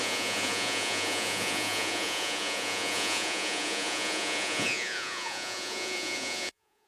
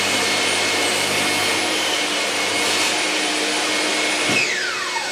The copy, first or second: first